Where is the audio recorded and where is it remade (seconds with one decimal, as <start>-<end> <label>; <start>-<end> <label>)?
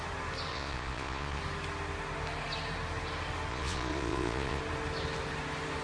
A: 0.0-0.5 recorded; 0.5-1.4 remade; 1.4-3.5 recorded; 3.5-4.6 remade; 4.6-5.8 recorded